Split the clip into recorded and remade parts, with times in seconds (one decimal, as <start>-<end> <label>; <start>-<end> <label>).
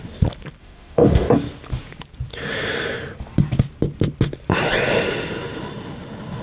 0.0-0.6 recorded; 0.6-1.3 remade; 1.3-6.4 recorded